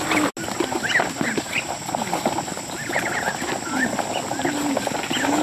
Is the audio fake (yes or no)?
no